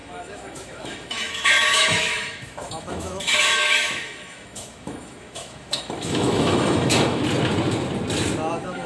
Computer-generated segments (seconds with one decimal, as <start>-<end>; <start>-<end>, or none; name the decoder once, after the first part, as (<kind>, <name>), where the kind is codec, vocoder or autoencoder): 0.0-7.2 (autoencoder, DAC-VAE); 8.5-8.9